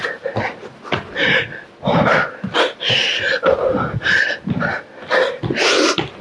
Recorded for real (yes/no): yes